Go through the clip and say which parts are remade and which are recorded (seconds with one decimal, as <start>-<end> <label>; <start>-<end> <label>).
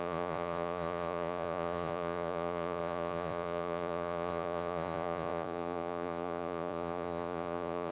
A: 0.0-7.9 remade